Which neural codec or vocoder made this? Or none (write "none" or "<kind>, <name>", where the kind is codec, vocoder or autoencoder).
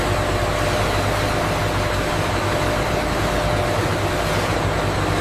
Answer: none